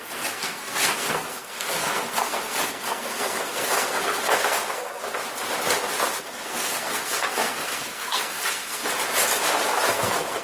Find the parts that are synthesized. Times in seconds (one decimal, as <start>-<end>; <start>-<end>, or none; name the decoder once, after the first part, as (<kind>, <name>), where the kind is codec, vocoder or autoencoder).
0.0-5.0 (codec, SNAC); 6.2-8.8; 9.9-10.4